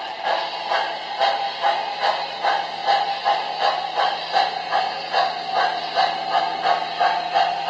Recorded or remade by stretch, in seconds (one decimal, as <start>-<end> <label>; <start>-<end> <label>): 0.0-7.7 recorded